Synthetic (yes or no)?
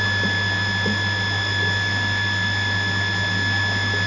no